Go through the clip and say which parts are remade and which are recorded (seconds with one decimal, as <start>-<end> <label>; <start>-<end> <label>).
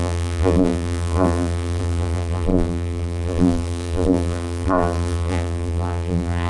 0.0-6.5 remade